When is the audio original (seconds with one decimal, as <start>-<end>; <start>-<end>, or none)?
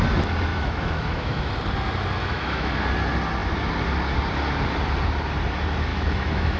0.0-0.5; 1.5-2.2; 2.7-5.9